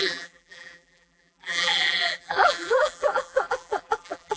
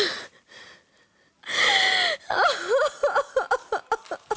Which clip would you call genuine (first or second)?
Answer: second